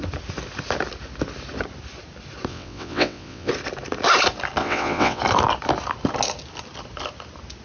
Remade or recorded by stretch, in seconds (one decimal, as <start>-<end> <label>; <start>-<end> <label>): 0.0-2.5 recorded; 2.5-3.5 remade; 3.5-4.6 recorded; 4.6-5.2 remade; 5.2-7.6 recorded